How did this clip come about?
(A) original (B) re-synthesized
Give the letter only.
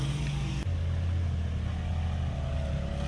A